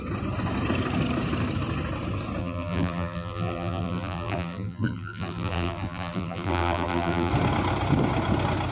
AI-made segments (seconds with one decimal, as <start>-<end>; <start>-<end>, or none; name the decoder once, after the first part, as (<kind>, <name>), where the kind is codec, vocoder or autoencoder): 2.4-7.3 (vocoder, BigVGAN v2)